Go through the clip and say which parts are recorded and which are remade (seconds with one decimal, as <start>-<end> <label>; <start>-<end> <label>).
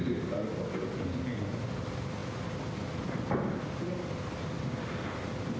0.0-5.6 recorded